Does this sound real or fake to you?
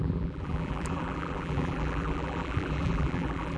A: fake